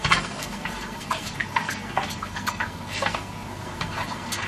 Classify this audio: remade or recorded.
remade